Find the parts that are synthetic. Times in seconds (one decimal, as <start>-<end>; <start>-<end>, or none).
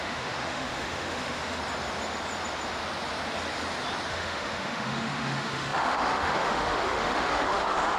0.0-1.6; 4.1-8.0